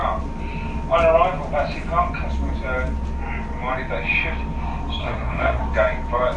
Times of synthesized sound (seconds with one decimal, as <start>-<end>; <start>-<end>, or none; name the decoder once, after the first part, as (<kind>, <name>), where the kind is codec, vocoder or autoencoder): 5.0-5.6 (codec, SNAC)